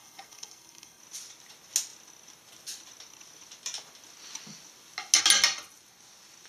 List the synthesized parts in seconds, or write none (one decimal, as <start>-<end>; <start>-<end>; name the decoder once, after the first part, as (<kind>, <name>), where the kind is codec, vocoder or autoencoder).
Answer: 0.0-1.0 (codec, SNAC)